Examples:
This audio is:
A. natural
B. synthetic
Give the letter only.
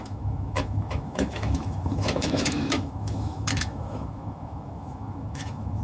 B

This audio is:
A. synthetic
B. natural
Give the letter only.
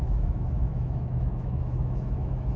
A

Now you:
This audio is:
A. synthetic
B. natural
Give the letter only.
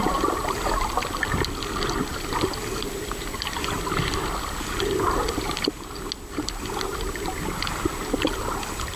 B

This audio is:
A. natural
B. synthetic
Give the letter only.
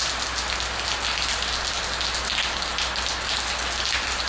A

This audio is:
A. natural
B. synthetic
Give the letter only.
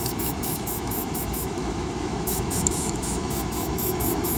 B